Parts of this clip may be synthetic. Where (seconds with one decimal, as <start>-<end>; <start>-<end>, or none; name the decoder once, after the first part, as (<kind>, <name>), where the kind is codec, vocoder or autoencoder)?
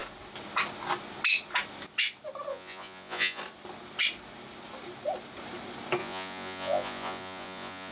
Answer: 2.5-3.4 (vocoder, Vocos); 6.0-7.9